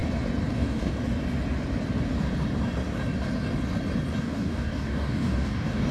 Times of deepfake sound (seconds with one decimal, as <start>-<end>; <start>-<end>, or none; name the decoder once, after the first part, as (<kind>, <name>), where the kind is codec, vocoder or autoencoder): 0.5-0.9 (codec, DAC); 4.2-5.9